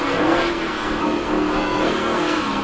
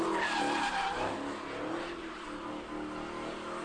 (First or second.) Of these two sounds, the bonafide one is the second